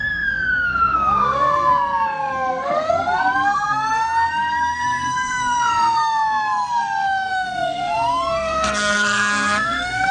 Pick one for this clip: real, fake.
fake